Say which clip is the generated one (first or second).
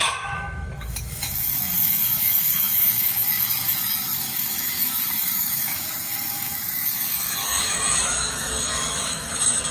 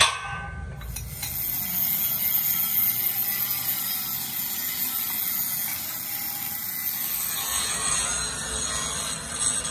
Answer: first